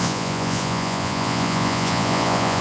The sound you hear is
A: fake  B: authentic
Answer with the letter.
A